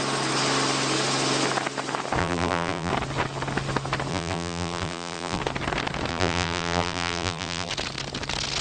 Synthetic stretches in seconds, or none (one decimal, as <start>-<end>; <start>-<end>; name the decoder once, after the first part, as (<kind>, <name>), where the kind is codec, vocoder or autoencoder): 2.2-2.9 (vocoder, BigVGAN v2); 4.1-5.4; 6.1-7.7